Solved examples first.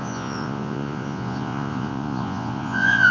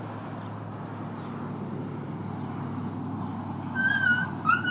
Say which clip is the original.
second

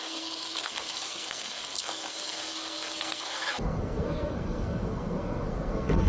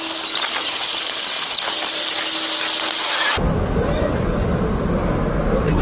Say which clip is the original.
second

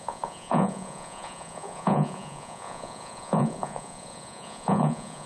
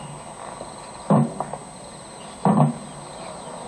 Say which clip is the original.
second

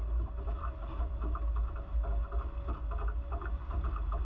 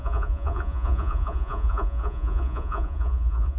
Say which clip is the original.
first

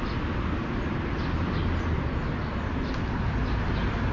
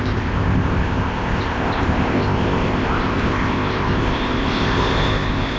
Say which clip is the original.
first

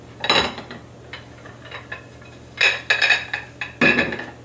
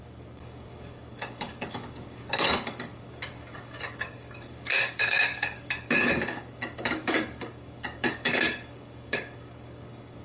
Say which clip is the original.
first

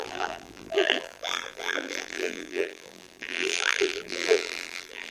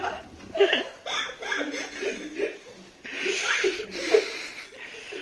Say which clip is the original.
second